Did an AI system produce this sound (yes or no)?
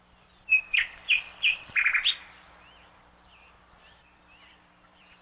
yes